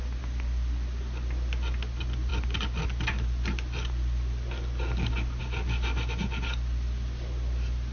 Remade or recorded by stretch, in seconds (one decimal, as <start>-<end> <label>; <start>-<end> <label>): 0.0-7.9 recorded

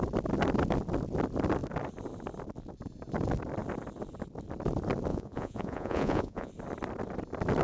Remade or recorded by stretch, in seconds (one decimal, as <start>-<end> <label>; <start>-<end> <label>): 0.0-5.1 recorded; 5.1-6.5 remade; 6.5-7.6 recorded

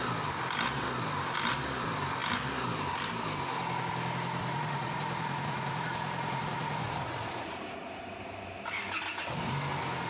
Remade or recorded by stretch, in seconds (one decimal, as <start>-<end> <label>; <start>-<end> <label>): 0.0-4.5 recorded; 4.5-7.6 remade; 7.6-10.1 recorded

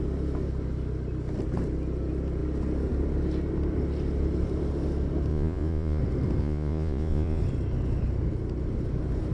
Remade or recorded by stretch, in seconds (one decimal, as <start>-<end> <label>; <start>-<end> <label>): 0.0-5.3 recorded; 5.3-6.0 remade; 6.0-6.4 recorded; 6.4-7.4 remade; 7.4-9.3 recorded

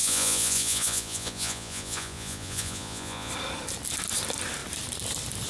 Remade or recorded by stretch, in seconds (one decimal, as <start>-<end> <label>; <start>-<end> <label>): 0.0-3.3 remade; 3.3-5.5 recorded

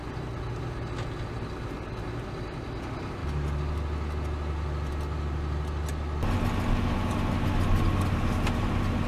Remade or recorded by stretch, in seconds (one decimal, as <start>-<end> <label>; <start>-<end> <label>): 0.0-9.1 recorded